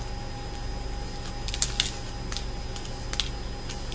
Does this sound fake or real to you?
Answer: real